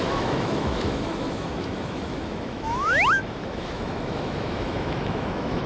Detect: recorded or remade remade